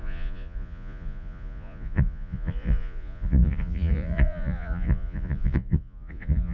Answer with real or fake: fake